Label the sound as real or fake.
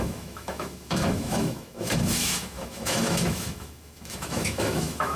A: fake